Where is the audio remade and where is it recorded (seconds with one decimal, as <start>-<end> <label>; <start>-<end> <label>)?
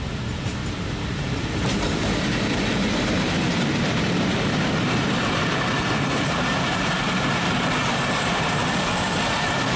0.0-8.6 remade; 8.6-9.8 recorded